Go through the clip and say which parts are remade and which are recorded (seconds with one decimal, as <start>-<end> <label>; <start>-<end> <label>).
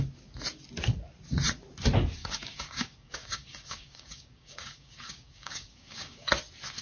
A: 0.0-2.2 recorded; 2.2-6.3 remade; 6.3-6.8 recorded